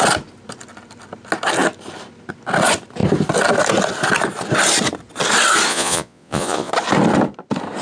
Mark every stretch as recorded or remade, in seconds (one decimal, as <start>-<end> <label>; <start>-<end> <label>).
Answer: 0.0-5.7 recorded; 5.7-6.7 remade; 6.7-7.8 recorded